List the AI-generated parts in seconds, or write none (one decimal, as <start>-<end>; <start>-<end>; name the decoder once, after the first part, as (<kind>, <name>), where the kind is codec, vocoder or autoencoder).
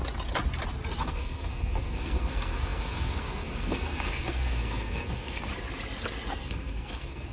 1.0-5.5 (codec, SNAC); 6.3-7.3